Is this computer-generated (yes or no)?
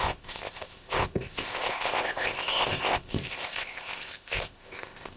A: yes